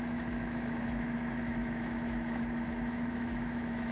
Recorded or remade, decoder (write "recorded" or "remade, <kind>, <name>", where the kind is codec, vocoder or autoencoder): remade, autoencoder, DAC-VAE